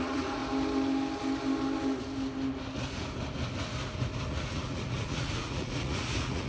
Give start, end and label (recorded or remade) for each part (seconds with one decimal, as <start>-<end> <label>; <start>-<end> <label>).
0.0-0.4 remade; 0.4-4.3 recorded; 4.3-6.5 remade